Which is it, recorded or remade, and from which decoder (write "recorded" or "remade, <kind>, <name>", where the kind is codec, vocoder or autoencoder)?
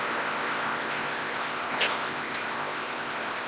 remade, codec, ZipCodec